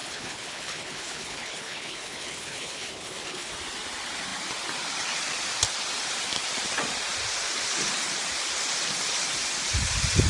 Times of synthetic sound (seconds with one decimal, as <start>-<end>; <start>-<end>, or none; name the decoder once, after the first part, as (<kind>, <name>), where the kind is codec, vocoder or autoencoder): 0.0-3.5 (codec, HILCodec)